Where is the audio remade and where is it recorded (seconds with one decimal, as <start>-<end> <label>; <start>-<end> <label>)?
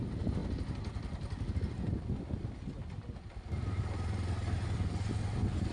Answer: 0.0-5.7 recorded